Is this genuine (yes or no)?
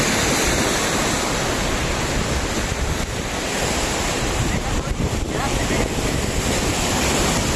yes